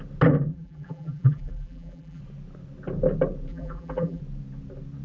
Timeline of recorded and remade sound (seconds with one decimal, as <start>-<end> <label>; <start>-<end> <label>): 0.0-0.5 recorded; 0.5-2.2 remade; 2.2-3.5 recorded; 3.5-4.2 remade; 4.2-5.0 recorded